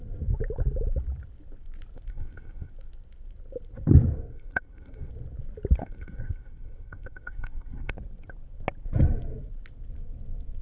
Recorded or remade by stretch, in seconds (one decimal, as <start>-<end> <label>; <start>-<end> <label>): 0.0-2.1 recorded; 2.1-2.7 remade; 2.7-4.3 recorded; 4.3-5.1 remade; 5.1-5.8 recorded; 5.8-7.9 remade; 7.9-10.6 recorded